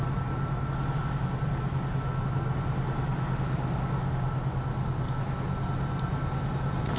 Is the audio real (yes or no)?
yes